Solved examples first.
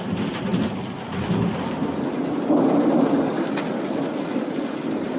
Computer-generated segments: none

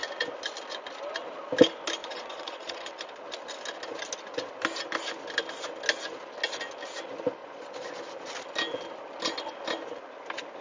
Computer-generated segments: 2.0-2.9 (vocoder, Vocos); 7.4-8.0

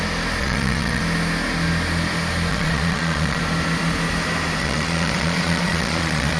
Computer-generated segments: 0.4-1.0 (vocoder, Vocos); 2.5-3.4; 4.6-6.4

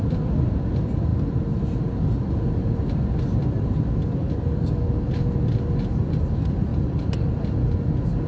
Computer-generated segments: none